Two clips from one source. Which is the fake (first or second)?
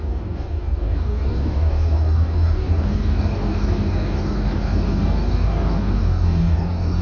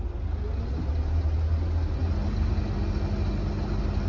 first